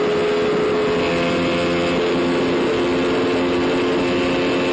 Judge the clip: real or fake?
real